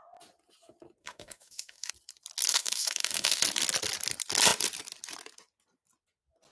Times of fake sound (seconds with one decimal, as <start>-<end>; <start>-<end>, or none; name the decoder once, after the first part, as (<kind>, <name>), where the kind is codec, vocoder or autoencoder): 1.0-1.9 (autoencoder, DAC-VAE); 2.5-3.4